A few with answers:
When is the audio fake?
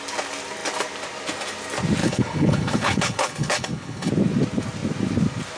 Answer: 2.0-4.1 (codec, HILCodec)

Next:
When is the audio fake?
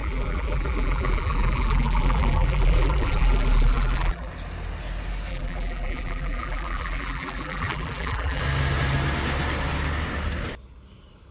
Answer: 0.0-4.3 (vocoder, BigVGAN v2); 5.3-8.4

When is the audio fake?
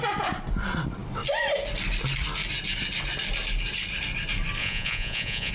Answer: 4.6-5.5 (vocoder, Vocos)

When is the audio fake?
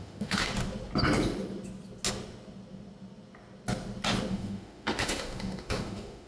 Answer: 0.0-0.5 (autoencoder, DAC-VAE); 4.3-6.3